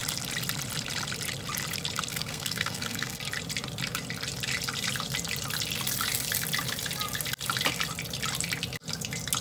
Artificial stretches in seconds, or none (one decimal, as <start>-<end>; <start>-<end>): 2.1-3.2